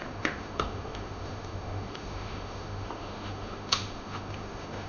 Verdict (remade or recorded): remade